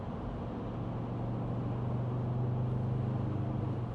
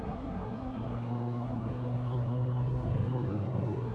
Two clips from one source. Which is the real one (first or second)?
first